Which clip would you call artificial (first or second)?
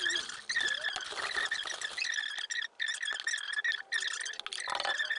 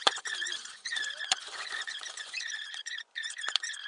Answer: second